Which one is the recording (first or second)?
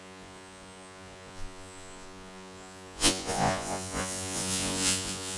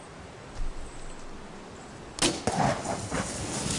second